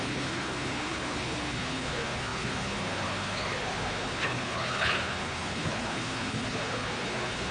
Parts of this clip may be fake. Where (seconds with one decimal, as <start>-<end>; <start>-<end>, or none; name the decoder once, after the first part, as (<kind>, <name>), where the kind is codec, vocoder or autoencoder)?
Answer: 0.0-7.5 (codec, HILCodec)